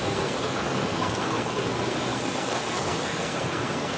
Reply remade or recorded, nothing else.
remade